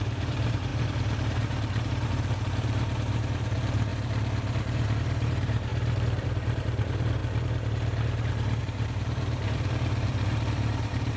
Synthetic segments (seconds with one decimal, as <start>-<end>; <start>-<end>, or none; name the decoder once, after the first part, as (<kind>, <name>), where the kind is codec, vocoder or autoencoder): 0.0-3.9 (vocoder, BigVGAN v2); 4.6-5.7; 6.2-7.2; 8.6-11.2